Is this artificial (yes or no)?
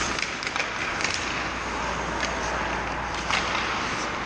no